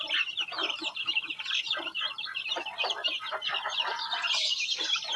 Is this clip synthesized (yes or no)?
no